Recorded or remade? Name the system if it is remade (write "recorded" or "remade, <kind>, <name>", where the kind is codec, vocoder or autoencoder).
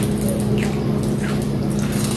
recorded